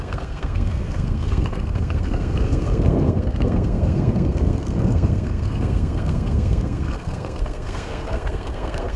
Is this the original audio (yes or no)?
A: no